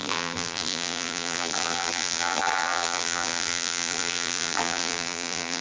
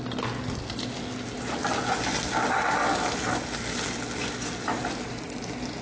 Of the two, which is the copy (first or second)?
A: first